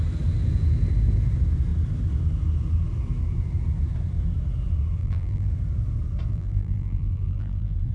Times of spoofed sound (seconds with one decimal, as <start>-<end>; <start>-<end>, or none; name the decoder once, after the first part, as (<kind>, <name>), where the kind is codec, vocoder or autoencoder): 5.0-5.5 (vocoder, BigVGAN v2); 6.3-7.9